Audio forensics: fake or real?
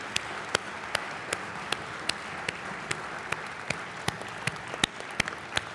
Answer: real